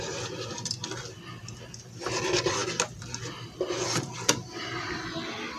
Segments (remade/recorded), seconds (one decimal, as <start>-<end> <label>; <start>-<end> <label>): 0.0-5.6 recorded